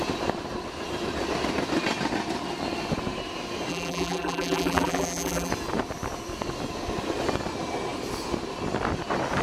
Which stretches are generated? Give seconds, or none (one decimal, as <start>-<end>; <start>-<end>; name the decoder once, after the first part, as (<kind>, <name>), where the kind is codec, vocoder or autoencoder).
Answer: 3.7-5.5 (vocoder, BigVGAN v2)